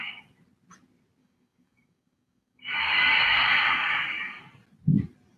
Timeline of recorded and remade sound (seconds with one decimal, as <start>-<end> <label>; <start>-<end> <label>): 0.0-1.2 recorded; 1.2-4.4 remade; 4.4-5.4 recorded